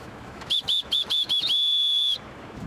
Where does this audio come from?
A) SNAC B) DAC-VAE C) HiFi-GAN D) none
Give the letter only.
B